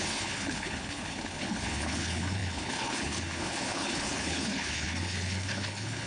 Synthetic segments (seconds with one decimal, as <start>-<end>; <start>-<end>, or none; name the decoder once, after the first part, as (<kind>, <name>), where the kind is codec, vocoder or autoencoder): 0.0-6.1 (codec, HILCodec)